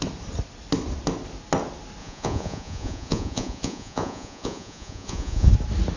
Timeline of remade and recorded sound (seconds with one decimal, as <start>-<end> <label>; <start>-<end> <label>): 0.0-2.0 recorded; 2.0-5.5 remade; 5.5-6.0 recorded